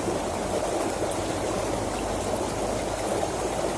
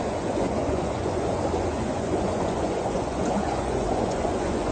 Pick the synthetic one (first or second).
second